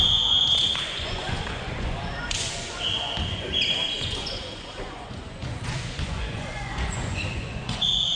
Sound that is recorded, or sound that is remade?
remade